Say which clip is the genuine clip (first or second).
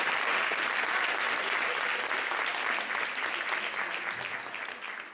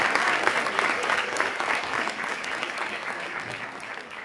first